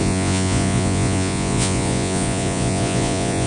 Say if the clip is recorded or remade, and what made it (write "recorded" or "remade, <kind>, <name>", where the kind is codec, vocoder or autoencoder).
remade, vocoder, Vocos